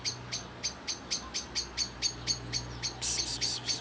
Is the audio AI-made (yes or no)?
no